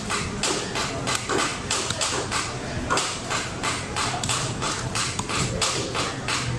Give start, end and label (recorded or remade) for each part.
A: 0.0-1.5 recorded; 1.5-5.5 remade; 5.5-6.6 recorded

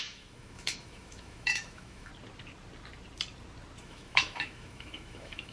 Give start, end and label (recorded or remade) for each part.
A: 0.0-2.1 remade; 2.1-3.8 recorded; 3.8-5.5 remade

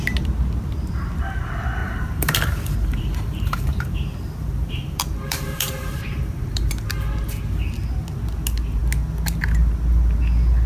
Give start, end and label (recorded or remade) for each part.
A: 0.0-1.8 recorded; 1.8-6.7 remade; 6.7-10.7 recorded

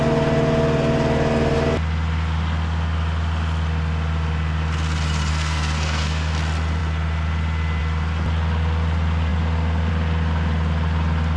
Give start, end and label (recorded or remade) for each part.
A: 0.0-5.3 recorded; 5.3-6.3 remade; 6.3-11.4 recorded